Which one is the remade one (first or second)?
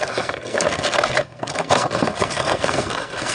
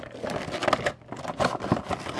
first